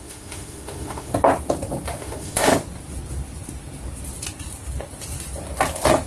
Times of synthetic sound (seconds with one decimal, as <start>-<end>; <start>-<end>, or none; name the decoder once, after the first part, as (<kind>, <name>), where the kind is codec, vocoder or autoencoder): 0.0-1.1 (autoencoder, DAC-VAE); 2.0-2.5